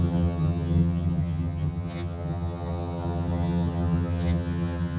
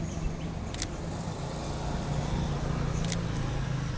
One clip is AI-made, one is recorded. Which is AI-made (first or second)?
first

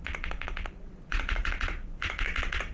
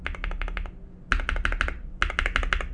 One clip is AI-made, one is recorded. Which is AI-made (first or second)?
first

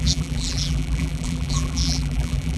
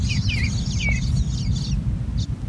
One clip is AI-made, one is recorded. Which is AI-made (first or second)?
first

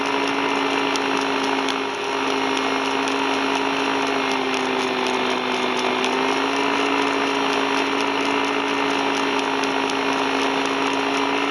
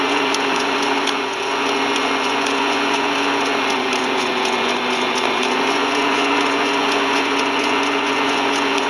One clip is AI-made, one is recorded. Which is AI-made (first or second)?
second